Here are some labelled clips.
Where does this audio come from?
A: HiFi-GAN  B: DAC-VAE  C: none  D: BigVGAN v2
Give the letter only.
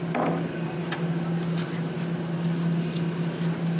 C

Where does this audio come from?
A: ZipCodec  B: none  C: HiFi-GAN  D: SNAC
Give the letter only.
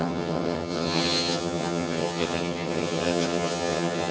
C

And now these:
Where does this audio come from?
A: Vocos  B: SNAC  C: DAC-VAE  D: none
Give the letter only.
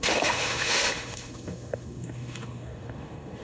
C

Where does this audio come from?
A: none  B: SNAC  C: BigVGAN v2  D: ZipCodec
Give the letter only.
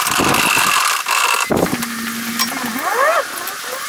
A